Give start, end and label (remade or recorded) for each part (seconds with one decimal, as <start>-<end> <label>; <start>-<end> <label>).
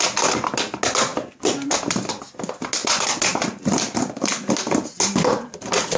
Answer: 0.0-6.0 recorded